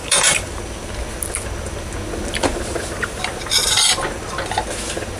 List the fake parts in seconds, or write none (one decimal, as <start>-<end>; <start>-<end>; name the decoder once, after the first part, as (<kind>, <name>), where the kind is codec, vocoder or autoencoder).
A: 0.0-0.6 (vocoder, BigVGAN v2); 2.5-3.3